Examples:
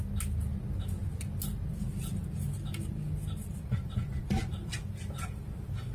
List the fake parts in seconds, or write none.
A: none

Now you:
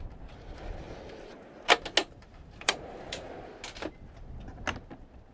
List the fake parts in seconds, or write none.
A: 2.0-3.3 (vocoder, BigVGAN v2)

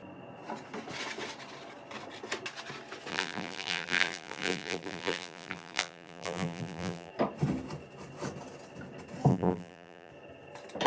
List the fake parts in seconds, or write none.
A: 3.1-7.1 (vocoder, BigVGAN v2); 9.3-10.1